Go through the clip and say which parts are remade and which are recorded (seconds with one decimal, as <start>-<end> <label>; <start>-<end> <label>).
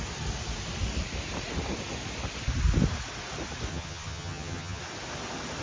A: 0.0-3.7 recorded; 3.7-4.8 remade; 4.8-5.6 recorded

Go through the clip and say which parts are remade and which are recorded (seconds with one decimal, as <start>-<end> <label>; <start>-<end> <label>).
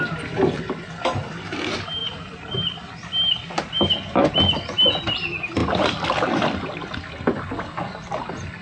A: 0.0-8.6 recorded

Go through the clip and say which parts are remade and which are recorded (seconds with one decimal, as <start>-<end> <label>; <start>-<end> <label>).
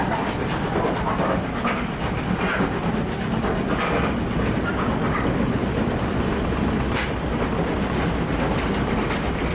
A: 0.0-5.6 recorded; 5.6-6.6 remade; 6.6-7.8 recorded; 7.8-8.9 remade; 8.9-9.5 recorded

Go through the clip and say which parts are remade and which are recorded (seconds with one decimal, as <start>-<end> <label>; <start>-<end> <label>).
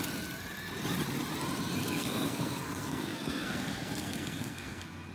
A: 0.0-1.8 recorded; 1.8-5.1 remade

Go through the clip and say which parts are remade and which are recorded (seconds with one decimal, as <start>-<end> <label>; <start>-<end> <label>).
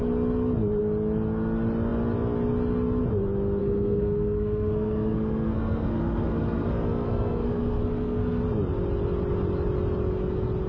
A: 0.0-3.6 recorded; 3.6-8.4 remade; 8.4-10.7 recorded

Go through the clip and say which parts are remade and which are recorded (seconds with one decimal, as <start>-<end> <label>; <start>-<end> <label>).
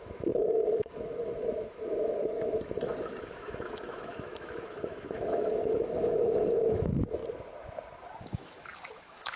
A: 0.0-7.2 remade; 7.2-8.2 recorded; 8.2-9.4 remade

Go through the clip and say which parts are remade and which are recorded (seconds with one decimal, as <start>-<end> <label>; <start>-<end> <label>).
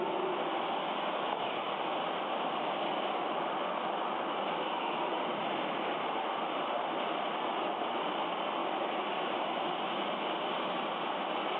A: 0.0-11.6 recorded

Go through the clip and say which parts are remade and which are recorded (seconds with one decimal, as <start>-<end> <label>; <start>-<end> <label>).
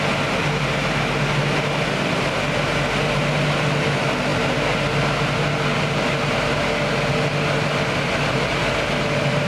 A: 0.0-9.5 recorded